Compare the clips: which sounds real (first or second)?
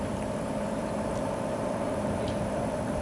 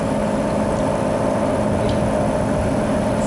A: second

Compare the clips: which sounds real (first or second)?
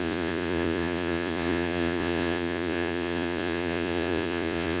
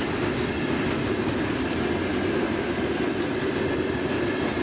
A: second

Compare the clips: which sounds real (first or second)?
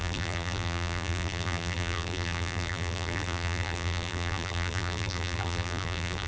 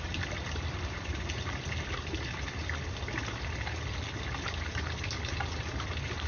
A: second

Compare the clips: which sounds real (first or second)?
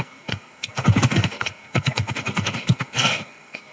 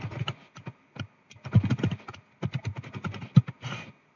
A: second